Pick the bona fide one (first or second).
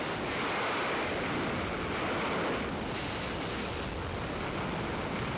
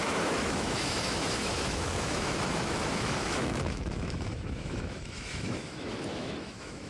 first